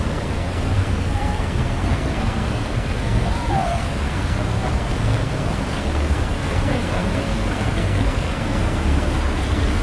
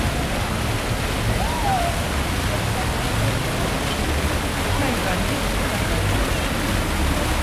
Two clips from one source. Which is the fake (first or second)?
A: first